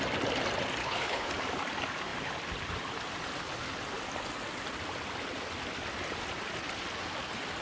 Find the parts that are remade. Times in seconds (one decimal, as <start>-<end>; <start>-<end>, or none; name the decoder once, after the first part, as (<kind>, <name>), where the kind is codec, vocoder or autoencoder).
0.8-1.3 (codec, HILCodec)